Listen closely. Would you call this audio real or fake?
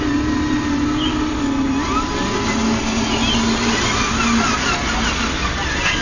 real